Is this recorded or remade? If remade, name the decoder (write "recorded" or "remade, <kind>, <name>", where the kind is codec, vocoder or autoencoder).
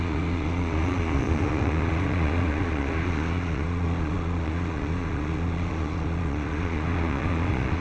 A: remade, vocoder, Vocos